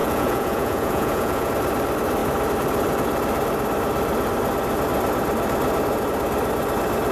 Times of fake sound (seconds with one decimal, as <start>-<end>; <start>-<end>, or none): 0.0-1.5